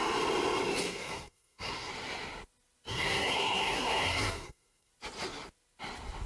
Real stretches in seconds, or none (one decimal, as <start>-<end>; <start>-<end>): 0.0-0.8; 1.9-2.9; 4.9-6.3